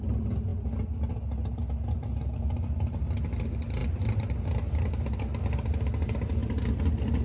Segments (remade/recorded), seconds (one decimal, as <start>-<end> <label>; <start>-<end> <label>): 0.0-7.2 recorded